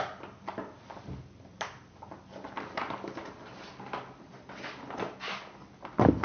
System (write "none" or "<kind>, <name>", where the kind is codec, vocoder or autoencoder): none